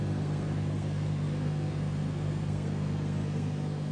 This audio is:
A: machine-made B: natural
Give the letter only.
A